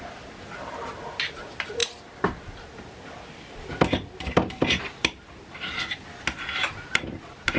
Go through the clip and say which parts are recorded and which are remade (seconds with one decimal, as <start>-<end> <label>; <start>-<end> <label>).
0.0-7.6 recorded